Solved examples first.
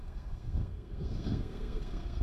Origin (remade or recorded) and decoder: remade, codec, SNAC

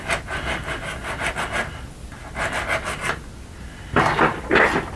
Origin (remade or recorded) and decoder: recorded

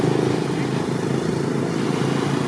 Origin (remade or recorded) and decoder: recorded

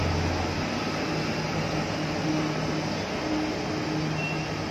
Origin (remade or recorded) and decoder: recorded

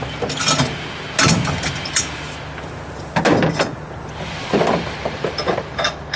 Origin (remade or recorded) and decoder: recorded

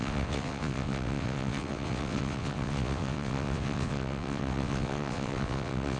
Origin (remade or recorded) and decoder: remade, vocoder, WaveNeXt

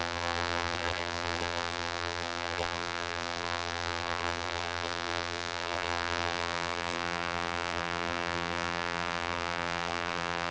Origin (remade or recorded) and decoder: remade, vocoder, BigVGAN v2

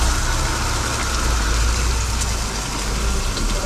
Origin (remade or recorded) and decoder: recorded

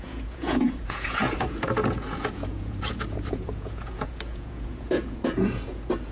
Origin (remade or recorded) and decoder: remade, vocoder, Vocos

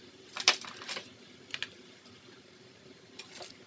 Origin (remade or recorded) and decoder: recorded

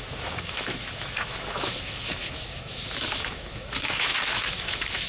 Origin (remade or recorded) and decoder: remade, autoencoder, DAC-VAE